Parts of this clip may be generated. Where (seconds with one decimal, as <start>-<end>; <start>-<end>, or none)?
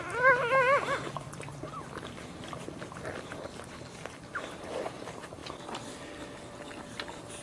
none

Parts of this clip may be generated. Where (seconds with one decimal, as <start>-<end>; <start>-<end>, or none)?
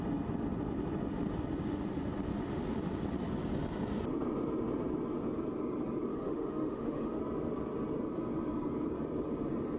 6.1-7.2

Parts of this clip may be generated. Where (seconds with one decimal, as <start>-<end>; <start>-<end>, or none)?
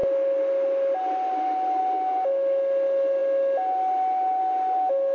none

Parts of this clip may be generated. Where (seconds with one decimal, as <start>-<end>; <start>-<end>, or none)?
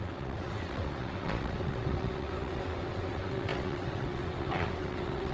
0.0-5.3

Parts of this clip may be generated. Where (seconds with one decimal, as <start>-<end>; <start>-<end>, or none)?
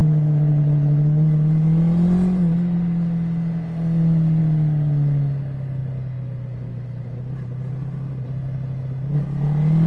none